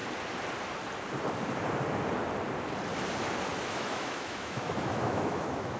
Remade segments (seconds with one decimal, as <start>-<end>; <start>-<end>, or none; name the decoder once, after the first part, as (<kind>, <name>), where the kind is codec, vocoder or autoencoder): 3.5-5.8 (autoencoder, DAC-VAE)